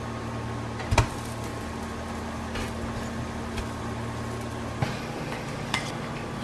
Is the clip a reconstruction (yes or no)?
no